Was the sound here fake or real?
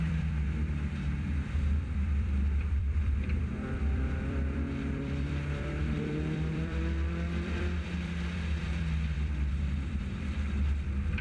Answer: fake